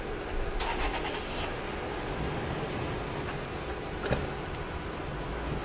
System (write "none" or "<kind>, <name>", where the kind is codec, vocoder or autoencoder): none